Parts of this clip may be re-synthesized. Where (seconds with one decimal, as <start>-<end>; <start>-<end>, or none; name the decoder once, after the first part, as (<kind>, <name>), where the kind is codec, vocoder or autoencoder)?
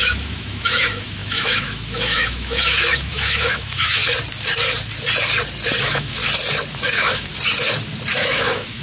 0.0-4.0 (autoencoder, DAC-VAE); 5.8-6.2; 6.8-7.3; 8.2-8.8